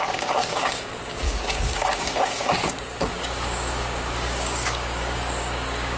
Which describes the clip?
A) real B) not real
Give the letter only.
B